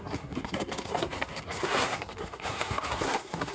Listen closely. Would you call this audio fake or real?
fake